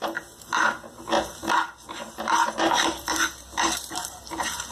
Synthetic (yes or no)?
yes